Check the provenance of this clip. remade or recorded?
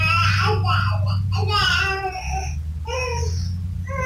recorded